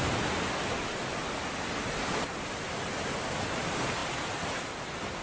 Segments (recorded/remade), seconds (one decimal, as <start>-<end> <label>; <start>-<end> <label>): 0.0-5.2 recorded